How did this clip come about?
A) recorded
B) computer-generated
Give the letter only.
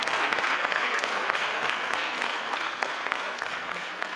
B